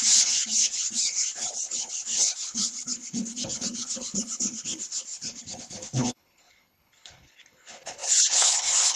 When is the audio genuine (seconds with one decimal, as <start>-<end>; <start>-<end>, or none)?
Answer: none